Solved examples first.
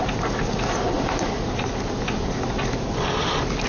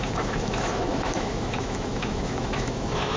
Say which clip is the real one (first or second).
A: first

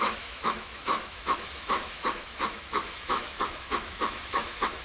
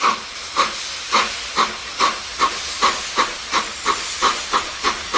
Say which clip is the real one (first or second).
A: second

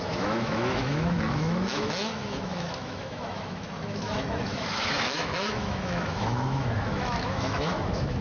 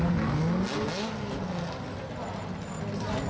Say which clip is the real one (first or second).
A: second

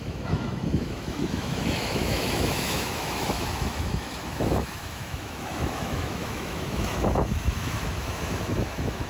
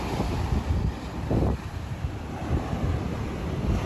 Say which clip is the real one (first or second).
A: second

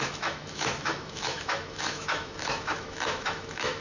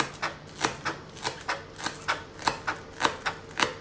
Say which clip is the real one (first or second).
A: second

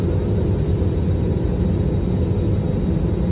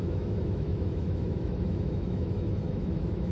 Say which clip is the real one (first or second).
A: first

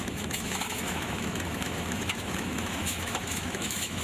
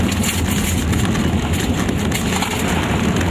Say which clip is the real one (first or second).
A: second